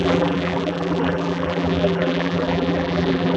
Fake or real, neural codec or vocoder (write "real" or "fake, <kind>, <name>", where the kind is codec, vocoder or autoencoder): fake, vocoder, BigVGAN v2